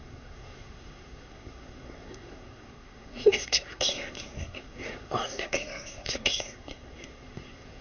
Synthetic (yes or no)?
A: yes